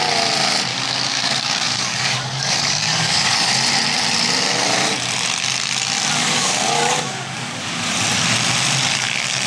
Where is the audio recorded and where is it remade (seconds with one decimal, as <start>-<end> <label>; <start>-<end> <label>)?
0.0-0.7 recorded; 0.7-3.5 remade; 3.5-6.2 recorded; 6.2-7.9 remade; 7.9-9.5 recorded